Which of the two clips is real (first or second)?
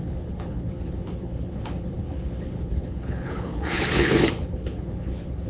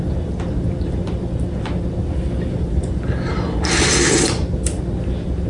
second